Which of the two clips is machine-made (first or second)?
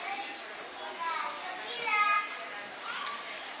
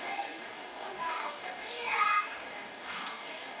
second